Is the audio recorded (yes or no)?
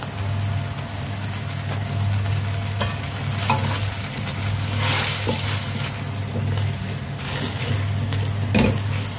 yes